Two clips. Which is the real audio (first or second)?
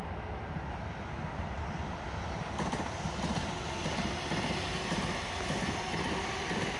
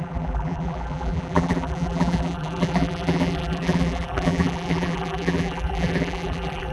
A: first